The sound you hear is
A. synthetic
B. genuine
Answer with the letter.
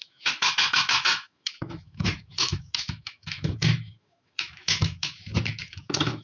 A